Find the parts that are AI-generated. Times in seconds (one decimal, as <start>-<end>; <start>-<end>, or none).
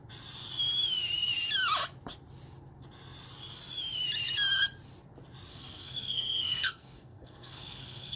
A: 5.5-8.2